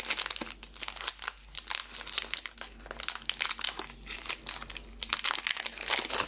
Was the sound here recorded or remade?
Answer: recorded